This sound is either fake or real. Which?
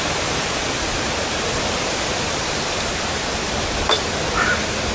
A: real